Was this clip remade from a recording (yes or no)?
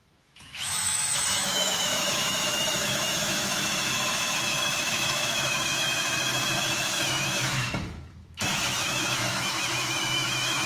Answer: yes